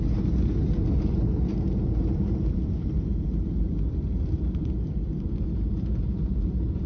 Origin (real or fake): real